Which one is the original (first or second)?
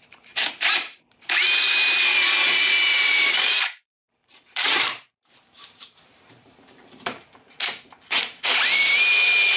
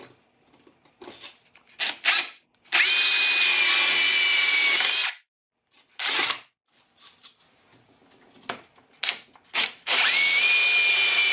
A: second